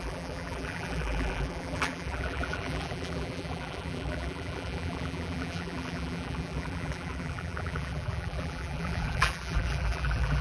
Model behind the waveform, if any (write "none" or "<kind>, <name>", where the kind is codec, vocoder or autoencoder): vocoder, BigVGAN v2